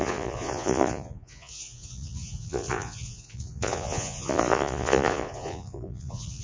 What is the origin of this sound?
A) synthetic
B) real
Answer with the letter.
A